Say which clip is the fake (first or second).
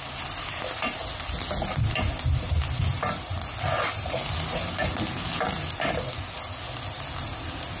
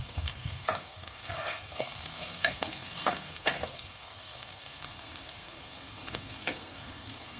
second